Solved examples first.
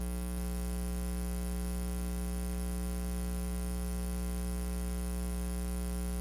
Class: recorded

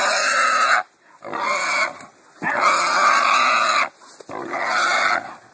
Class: recorded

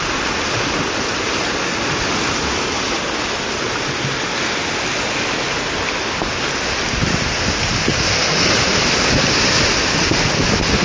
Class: recorded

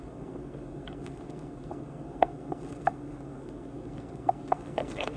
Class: remade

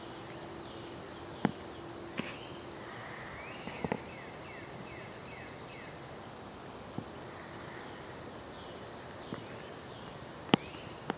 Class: recorded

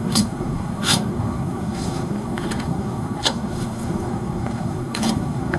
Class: remade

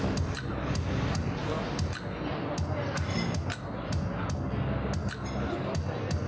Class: recorded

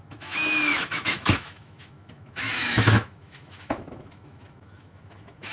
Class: remade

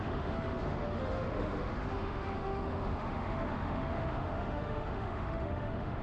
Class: remade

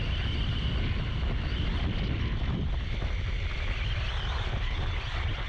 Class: recorded